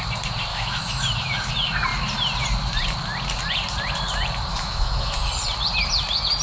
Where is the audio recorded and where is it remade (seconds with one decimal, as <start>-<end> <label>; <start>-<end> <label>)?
0.0-0.5 recorded; 0.5-1.5 remade; 1.5-4.5 recorded; 4.5-5.3 remade; 5.3-6.4 recorded